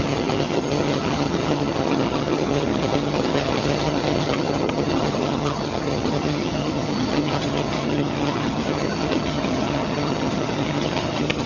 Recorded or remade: remade